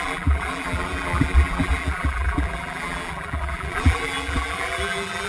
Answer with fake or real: fake